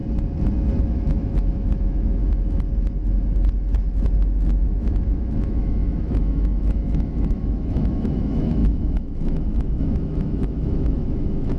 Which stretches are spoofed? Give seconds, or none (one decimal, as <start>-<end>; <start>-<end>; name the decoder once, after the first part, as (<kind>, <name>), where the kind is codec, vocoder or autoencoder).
0.8-2.2 (autoencoder, DAC-VAE); 4.7-11.6